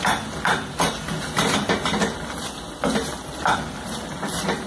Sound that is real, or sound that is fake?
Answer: real